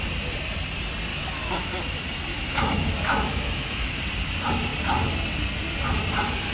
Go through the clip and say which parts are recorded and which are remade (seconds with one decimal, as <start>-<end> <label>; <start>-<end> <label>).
0.0-1.1 recorded; 1.1-1.7 remade; 1.7-2.3 recorded; 2.3-4.0 remade; 4.0-6.5 recorded